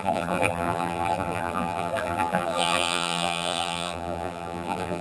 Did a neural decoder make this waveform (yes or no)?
yes